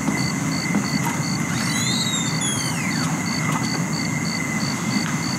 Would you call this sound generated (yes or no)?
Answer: no